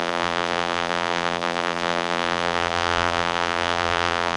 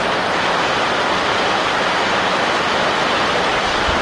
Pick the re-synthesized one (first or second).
first